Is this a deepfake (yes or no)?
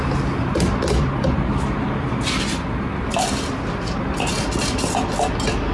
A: no